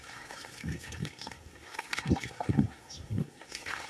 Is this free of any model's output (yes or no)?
no